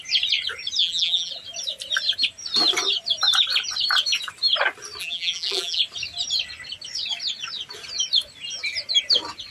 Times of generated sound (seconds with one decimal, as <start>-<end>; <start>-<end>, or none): 0.8-1.3; 5.0-5.8